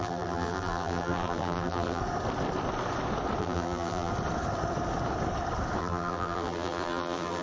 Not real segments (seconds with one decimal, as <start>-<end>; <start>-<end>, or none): 0.0-2.0; 3.4-4.1; 5.8-7.4